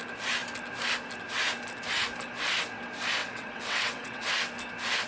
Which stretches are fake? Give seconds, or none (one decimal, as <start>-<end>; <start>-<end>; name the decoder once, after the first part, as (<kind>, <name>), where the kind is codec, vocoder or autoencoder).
3.2-4.3 (vocoder, WaveNeXt)